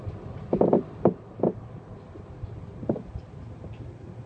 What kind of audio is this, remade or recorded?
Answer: recorded